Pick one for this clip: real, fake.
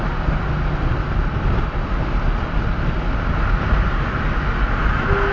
real